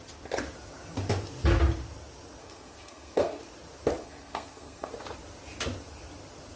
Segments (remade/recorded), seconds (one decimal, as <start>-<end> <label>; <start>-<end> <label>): 0.0-2.4 recorded; 2.4-3.4 remade; 3.4-4.0 recorded; 4.0-4.9 remade; 4.9-6.6 recorded